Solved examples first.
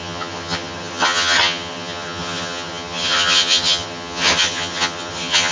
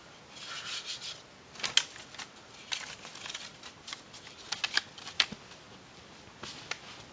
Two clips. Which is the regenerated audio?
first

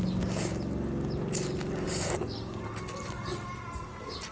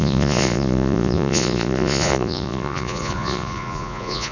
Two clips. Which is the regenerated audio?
second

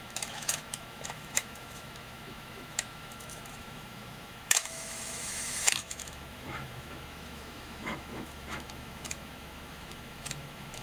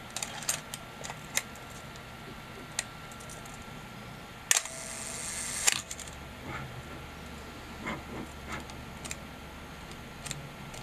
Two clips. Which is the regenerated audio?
first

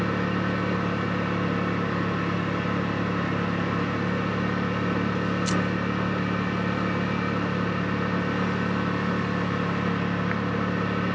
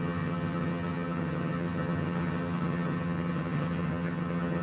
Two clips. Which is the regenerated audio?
second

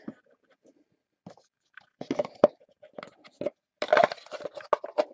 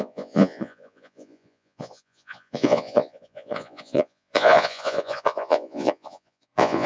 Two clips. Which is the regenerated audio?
second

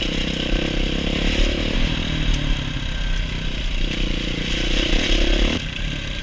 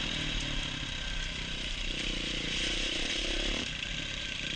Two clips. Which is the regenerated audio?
second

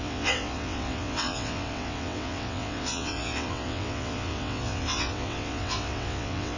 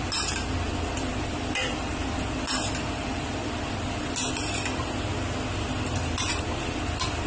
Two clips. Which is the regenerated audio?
first